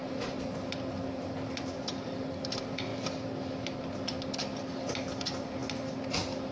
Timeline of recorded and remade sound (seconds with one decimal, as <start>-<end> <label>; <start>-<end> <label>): 0.0-2.9 remade; 2.9-4.6 recorded; 4.6-5.6 remade; 5.6-6.1 recorded; 6.1-6.5 remade